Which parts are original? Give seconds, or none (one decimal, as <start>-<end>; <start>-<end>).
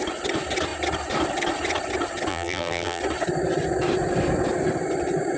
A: 0.0-2.3; 3.0-5.4